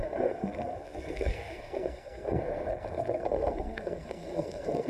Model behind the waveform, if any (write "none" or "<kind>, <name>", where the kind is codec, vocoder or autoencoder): codec, SNAC